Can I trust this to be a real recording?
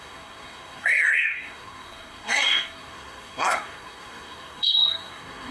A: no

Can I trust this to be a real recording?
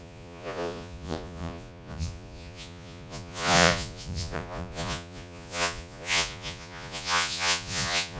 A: no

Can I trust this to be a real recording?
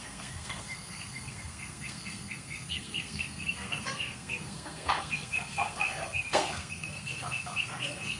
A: no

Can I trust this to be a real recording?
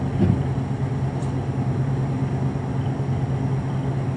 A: yes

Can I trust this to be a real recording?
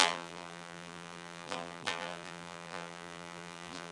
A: no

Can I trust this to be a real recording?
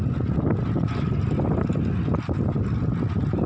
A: yes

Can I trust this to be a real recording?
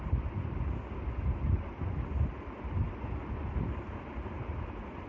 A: yes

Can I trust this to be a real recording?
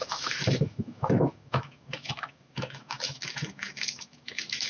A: no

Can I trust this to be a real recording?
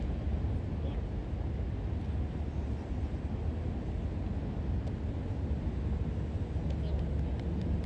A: yes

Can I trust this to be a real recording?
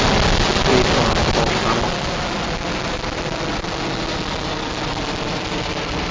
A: yes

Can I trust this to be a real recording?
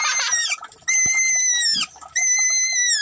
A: yes